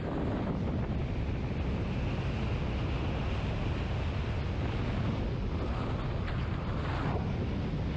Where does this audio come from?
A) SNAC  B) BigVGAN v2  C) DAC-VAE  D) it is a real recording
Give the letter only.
D